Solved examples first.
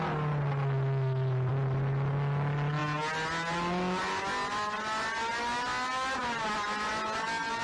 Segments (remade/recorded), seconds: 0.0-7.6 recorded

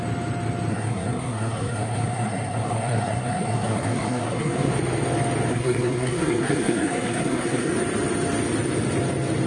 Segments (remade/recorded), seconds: 0.0-0.7 recorded; 0.7-4.7 remade; 4.7-5.5 recorded; 5.5-7.7 remade; 7.7-9.5 recorded

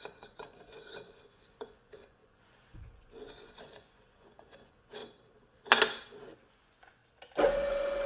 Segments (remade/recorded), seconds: 0.0-5.0 remade; 5.0-6.5 recorded; 6.5-7.0 remade; 7.0-7.6 recorded; 7.6-8.1 remade

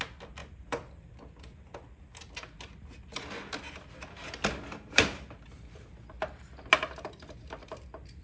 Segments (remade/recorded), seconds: 0.0-0.4 recorded; 0.4-0.9 remade; 0.9-8.2 recorded

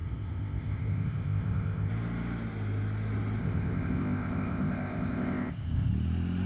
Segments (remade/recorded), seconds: 0.0-1.9 remade; 1.9-3.4 recorded; 3.4-5.9 remade; 5.9-6.5 recorded

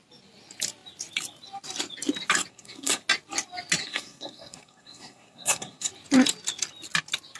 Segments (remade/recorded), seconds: 0.0-2.5 recorded; 2.5-3.0 remade; 3.0-3.8 recorded; 3.8-5.9 remade; 5.9-7.4 recorded